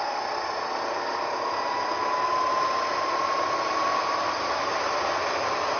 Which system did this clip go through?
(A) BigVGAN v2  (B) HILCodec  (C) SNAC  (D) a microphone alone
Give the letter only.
D